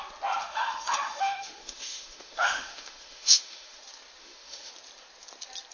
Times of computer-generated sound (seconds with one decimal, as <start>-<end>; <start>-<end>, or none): 0.4-3.8; 4.2-4.7